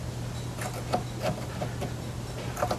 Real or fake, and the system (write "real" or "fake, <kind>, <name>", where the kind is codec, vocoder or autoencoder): real